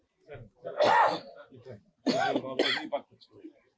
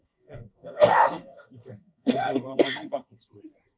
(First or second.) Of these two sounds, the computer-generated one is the second